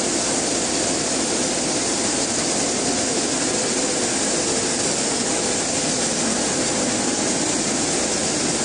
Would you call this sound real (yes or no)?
yes